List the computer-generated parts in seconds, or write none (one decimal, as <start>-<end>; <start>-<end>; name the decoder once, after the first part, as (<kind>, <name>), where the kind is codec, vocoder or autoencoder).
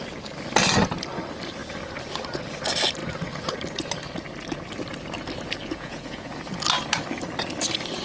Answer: 5.6-6.3 (vocoder, Vocos)